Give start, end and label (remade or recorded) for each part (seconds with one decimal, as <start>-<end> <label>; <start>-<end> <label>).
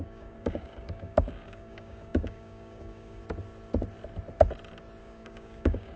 0.0-3.2 remade; 3.2-5.0 recorded; 5.0-6.0 remade